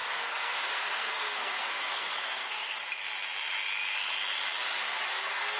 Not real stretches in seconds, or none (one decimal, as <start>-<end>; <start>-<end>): 0.0-2.8; 5.1-5.6